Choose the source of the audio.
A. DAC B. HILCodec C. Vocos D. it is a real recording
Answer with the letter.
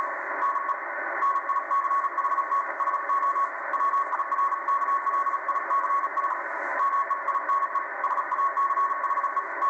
D